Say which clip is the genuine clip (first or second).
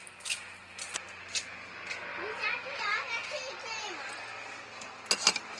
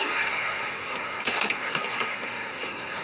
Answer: first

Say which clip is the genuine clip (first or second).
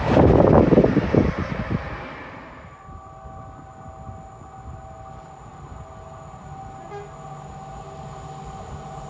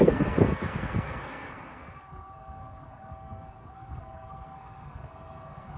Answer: first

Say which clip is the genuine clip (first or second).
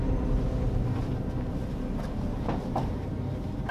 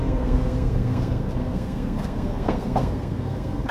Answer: first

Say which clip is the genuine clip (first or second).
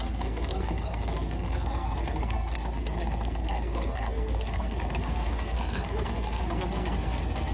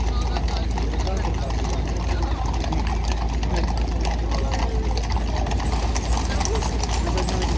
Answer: second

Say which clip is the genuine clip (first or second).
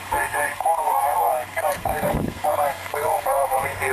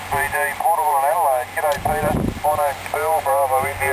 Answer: second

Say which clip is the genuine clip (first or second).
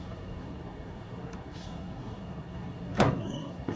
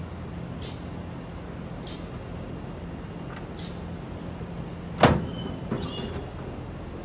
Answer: second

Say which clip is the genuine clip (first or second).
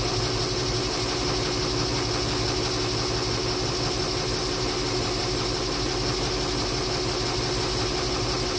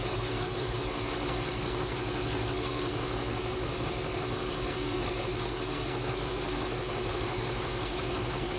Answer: first